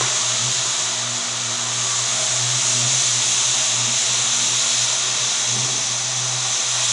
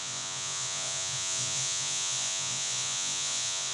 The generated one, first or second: second